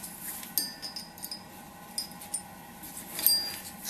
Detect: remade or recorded recorded